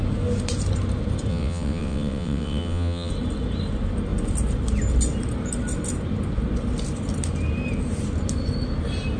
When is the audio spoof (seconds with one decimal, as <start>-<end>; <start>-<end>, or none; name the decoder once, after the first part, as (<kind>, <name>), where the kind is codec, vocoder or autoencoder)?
1.3-3.1 (vocoder, WaveNeXt)